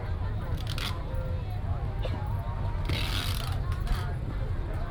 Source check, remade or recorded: recorded